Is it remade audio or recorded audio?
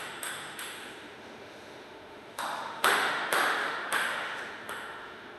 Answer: remade